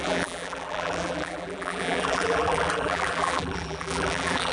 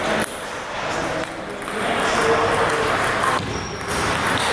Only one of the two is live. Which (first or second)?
second